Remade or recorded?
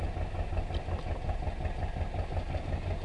recorded